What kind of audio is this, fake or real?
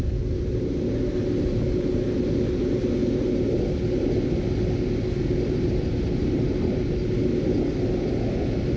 real